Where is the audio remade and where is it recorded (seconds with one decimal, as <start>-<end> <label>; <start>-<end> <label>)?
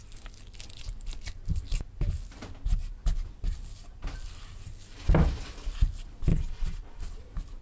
0.0-6.3 recorded; 6.3-7.0 remade; 7.0-7.6 recorded